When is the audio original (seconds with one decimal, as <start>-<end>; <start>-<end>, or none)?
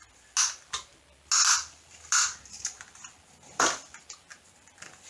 0.0-5.1